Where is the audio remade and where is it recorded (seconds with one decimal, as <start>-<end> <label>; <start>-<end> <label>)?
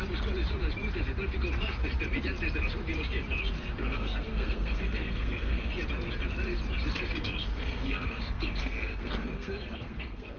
0.0-3.9 recorded; 3.9-5.7 remade; 5.7-7.5 recorded; 7.5-10.4 remade